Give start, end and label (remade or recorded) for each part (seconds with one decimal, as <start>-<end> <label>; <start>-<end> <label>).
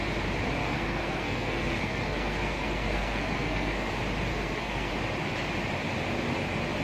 0.0-0.6 recorded; 0.6-3.9 remade; 3.9-4.3 recorded; 4.3-4.9 remade; 4.9-6.8 recorded